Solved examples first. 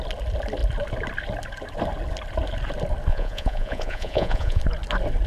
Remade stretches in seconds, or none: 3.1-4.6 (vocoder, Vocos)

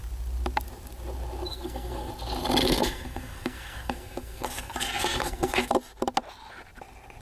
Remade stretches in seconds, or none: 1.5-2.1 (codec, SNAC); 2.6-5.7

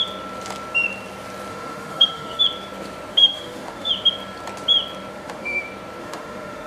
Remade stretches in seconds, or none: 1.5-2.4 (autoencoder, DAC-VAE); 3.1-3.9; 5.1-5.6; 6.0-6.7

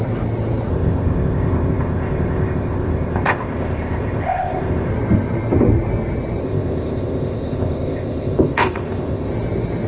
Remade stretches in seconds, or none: 0.7-4.9 (codec, ZipCodec); 6.4-9.3

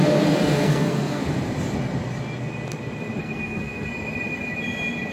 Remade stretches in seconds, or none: 0.0-1.2 (codec, SNAC); 3.2-3.9

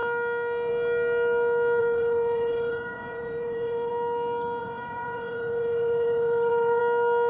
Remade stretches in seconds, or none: 1.8-3.9 (vocoder, Vocos); 4.6-6.8